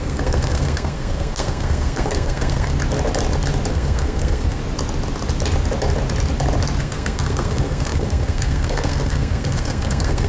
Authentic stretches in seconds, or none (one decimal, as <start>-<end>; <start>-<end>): 2.7-3.7; 4.6-6.8